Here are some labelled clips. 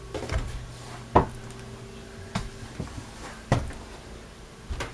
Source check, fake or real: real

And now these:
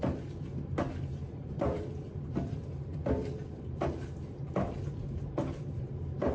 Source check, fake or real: fake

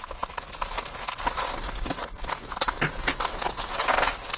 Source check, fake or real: real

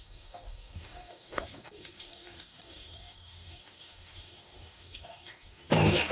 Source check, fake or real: fake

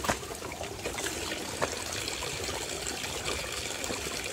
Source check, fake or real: real